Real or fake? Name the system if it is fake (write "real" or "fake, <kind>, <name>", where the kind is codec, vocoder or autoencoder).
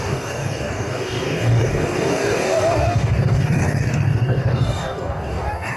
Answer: fake, codec, DAC